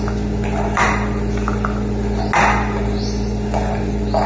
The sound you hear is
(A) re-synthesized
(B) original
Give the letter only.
B